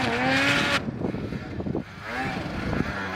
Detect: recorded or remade recorded